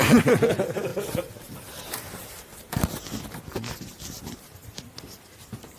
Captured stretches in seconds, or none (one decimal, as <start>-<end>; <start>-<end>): 0.0-5.8